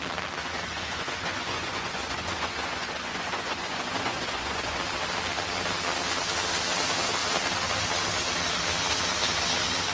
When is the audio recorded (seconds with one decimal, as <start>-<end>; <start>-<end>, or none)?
0.0-0.4; 4.8-9.9